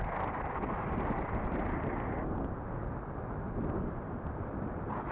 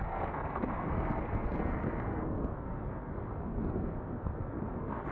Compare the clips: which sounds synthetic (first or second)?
second